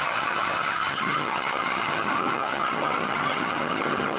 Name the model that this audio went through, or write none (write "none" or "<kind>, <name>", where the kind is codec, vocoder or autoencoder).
vocoder, HiFi-GAN